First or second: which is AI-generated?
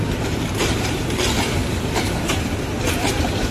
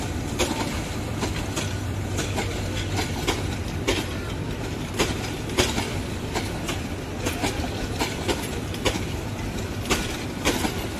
first